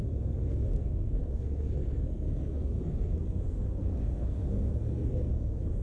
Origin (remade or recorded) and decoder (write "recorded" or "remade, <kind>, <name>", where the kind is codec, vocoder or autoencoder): remade, codec, SNAC